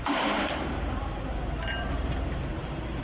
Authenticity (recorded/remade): remade